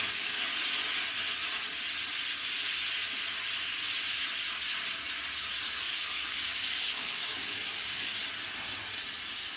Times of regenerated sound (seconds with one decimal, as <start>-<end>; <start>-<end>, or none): 0.0-0.5; 5.4-8.1